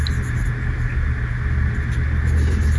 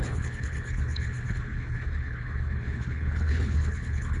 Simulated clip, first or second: second